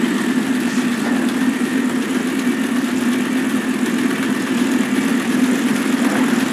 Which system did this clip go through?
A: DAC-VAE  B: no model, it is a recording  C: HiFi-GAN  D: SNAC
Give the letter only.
B